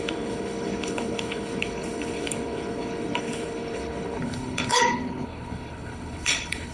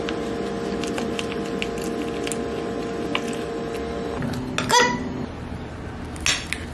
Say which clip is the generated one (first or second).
first